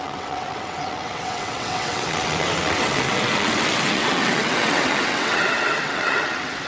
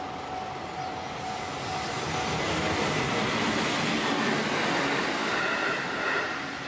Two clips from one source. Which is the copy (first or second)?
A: first